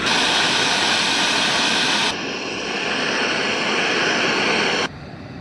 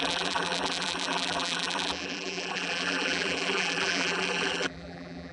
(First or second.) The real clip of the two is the first